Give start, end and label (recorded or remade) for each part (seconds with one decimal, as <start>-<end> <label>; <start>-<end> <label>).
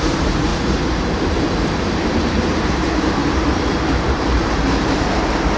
0.0-0.5 remade; 0.5-1.2 recorded; 1.2-3.2 remade; 3.2-4.0 recorded; 4.0-5.6 remade